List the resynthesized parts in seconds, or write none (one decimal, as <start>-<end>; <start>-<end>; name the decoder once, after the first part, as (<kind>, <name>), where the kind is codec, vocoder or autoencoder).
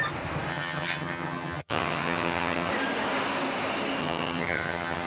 0.5-2.7 (vocoder, HiFi-GAN); 4.0-5.1